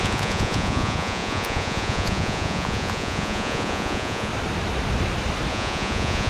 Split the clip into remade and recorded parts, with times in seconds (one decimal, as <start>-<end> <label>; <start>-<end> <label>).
0.0-4.3 remade; 4.3-5.5 recorded; 5.5-6.3 remade